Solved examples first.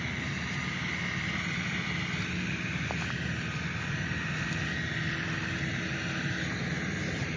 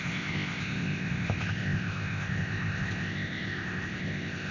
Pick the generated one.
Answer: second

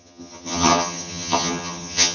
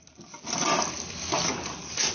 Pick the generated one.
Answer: first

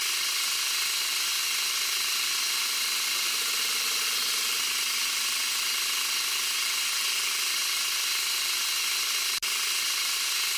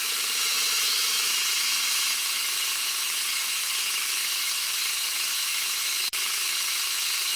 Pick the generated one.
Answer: second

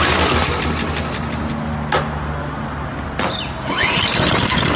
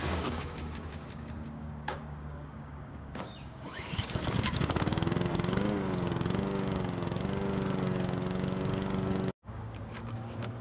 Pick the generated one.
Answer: second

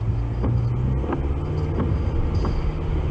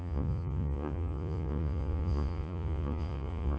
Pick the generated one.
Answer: second